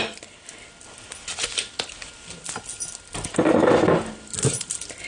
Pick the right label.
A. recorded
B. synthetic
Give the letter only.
A